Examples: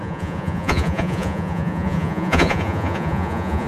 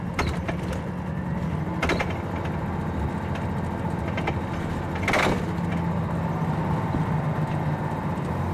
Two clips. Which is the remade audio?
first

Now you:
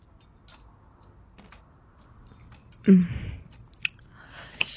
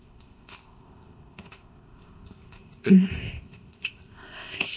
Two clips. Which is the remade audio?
second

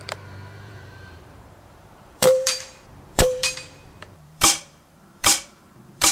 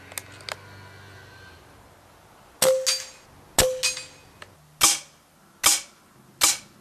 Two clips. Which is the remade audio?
first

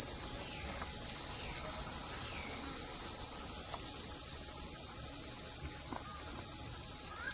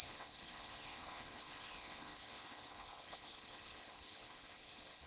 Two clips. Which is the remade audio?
second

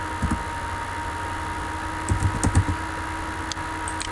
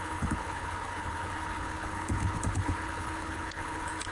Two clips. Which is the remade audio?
second